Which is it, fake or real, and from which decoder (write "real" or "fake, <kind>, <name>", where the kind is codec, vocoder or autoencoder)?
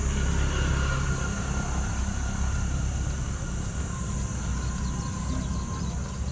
real